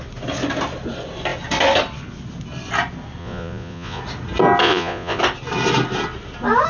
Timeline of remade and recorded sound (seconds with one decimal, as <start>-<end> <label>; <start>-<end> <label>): 0.0-3.2 recorded; 3.2-4.0 remade; 4.0-4.6 recorded; 4.6-5.2 remade; 5.2-6.7 recorded